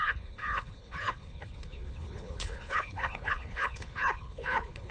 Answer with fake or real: fake